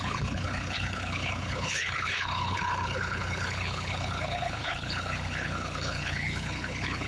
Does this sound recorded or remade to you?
remade